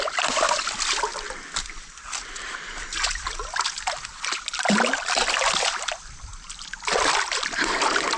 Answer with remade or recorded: recorded